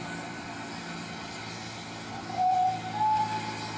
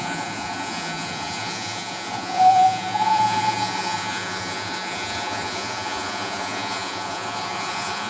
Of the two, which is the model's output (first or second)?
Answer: second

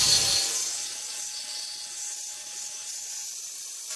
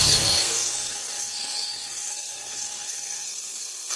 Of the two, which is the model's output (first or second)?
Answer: second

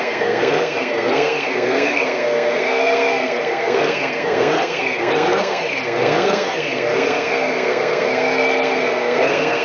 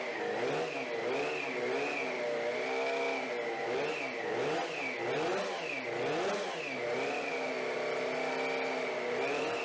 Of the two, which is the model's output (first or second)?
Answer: first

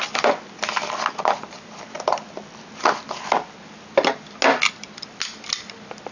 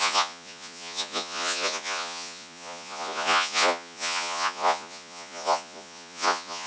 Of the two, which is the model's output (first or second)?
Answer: second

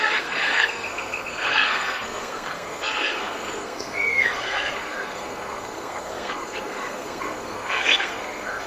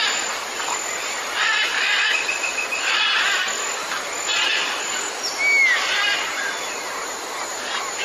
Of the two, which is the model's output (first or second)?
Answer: first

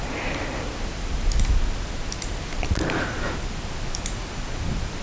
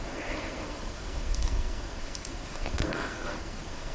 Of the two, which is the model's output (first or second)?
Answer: second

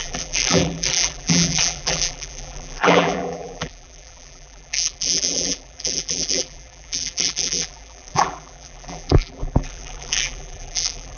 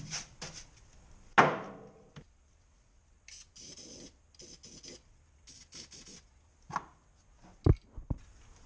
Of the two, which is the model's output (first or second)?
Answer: first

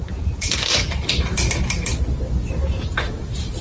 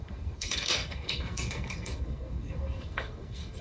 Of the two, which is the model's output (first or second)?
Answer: second